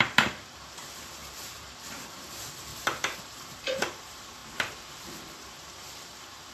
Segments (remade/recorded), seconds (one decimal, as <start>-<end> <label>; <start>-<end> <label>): 0.0-2.7 remade; 2.7-3.2 recorded; 3.2-4.4 remade; 4.4-5.4 recorded; 5.4-6.5 remade